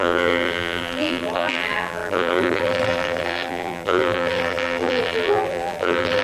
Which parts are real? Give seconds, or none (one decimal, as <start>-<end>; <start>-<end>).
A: none